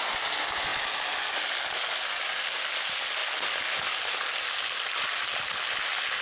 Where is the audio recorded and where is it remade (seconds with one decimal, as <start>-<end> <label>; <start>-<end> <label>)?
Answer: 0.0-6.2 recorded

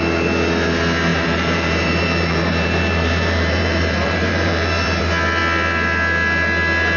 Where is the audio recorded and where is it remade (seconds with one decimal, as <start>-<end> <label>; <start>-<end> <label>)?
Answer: 0.0-1.1 recorded; 1.1-5.0 remade; 5.0-7.0 recorded

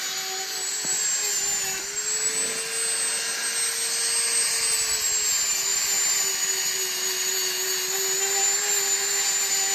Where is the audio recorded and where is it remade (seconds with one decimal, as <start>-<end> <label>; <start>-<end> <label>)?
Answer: 0.0-9.7 recorded

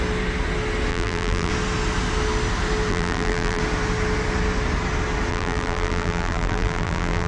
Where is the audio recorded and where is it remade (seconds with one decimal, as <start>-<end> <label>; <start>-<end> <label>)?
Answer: 0.0-0.9 recorded; 0.9-1.5 remade; 1.5-2.9 recorded; 2.9-3.6 remade; 3.6-5.3 recorded; 5.3-7.3 remade

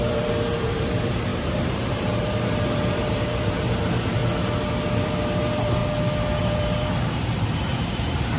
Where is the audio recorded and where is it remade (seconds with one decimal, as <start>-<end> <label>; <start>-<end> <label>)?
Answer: 0.0-4.2 remade; 4.2-5.0 recorded; 5.0-5.8 remade; 5.8-6.4 recorded; 6.4-8.4 remade

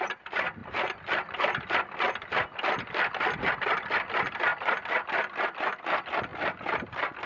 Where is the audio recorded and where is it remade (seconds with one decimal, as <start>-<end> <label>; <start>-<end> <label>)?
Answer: 0.0-7.3 recorded